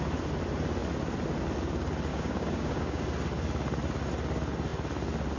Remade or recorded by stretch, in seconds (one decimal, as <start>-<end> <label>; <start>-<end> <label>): 0.0-2.1 recorded; 2.1-3.0 remade; 3.0-5.4 recorded